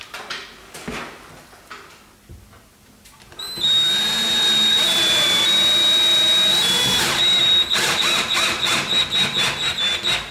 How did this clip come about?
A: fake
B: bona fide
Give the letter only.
B